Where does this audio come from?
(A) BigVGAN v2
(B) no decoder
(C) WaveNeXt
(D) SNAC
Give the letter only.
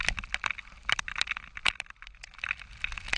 B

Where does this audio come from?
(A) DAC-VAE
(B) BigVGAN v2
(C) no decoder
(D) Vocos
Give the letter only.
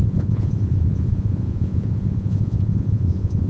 D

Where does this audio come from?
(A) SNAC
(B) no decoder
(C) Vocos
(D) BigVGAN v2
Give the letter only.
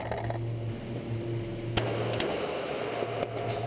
B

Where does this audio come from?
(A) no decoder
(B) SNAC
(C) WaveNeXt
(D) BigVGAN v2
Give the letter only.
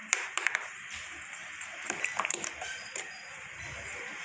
D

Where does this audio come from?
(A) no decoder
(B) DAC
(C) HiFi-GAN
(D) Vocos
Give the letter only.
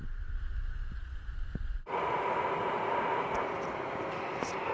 A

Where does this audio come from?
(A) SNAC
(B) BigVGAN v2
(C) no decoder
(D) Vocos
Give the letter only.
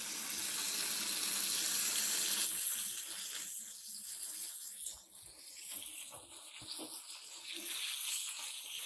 C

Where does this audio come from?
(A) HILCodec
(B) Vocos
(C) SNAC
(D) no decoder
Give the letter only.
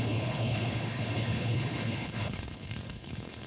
A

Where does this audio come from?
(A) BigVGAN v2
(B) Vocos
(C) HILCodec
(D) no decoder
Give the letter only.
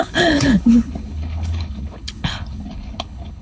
C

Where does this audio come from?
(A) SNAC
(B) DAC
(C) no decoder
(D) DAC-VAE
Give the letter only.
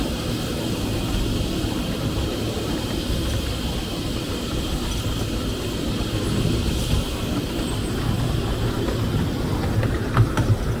C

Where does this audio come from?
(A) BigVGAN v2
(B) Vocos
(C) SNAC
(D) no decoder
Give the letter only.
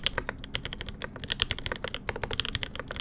D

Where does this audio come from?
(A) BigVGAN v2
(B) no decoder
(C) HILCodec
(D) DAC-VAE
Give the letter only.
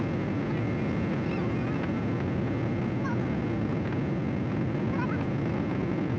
B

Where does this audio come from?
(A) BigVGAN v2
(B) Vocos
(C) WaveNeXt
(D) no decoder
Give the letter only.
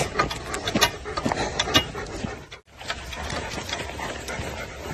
D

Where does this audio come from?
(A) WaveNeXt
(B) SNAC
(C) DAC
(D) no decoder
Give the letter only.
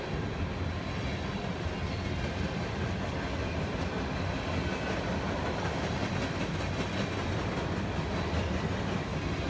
D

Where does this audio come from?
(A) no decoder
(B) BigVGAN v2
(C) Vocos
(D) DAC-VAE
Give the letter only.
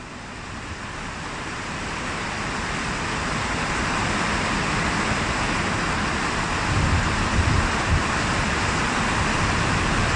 A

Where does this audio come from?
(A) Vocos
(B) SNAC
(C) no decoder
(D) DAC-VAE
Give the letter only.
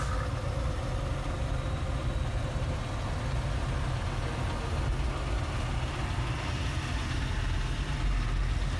C